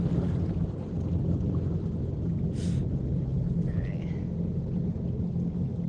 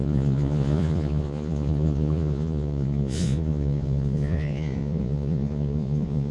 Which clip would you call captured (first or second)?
first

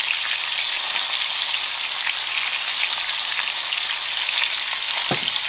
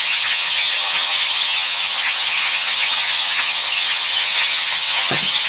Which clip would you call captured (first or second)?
first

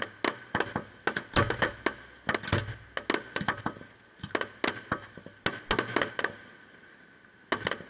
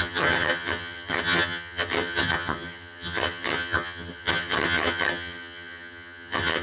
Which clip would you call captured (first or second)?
first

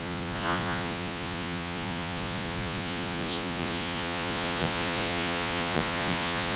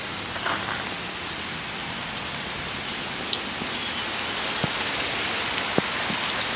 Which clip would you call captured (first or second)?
second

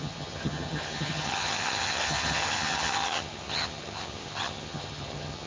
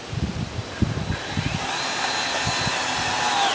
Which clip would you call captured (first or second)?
second